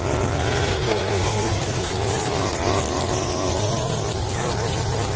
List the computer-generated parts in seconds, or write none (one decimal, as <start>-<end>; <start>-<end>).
0.7-1.9